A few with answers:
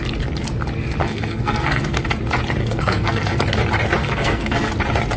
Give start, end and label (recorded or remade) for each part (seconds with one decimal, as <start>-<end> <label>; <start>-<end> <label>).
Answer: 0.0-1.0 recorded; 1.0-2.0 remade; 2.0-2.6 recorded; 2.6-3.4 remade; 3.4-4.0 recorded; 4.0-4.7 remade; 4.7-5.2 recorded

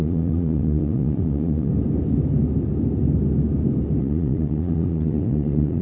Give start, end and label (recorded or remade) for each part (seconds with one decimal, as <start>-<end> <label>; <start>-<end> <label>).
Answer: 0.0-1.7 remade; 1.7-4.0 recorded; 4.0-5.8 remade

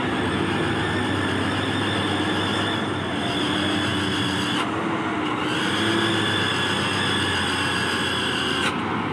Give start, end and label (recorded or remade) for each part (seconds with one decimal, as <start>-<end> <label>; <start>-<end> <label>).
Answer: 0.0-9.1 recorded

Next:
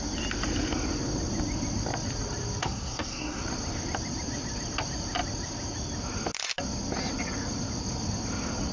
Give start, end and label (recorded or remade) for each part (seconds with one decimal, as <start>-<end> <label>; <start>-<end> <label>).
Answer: 0.0-2.6 recorded; 2.6-3.4 remade; 3.4-8.7 recorded

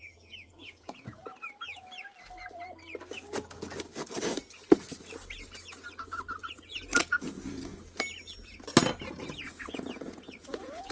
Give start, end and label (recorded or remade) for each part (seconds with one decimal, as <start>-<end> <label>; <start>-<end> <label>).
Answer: 0.0-1.2 remade; 1.2-6.4 recorded; 6.4-7.7 remade; 7.7-9.1 recorded; 9.1-10.9 remade